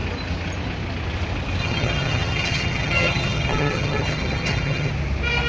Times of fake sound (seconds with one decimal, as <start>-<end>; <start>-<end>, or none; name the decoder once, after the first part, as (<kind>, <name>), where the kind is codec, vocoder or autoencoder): 1.6-4.9 (vocoder, HiFi-GAN)